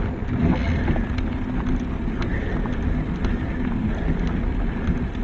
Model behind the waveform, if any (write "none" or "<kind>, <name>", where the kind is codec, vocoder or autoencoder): none